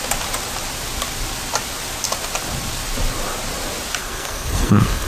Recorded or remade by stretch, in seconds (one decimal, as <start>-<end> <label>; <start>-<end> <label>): 0.0-4.0 recorded; 4.0-5.1 remade